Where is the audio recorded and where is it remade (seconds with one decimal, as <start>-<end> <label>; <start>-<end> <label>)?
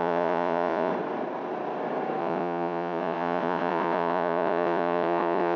0.0-0.9 remade; 0.9-2.2 recorded; 2.2-5.6 remade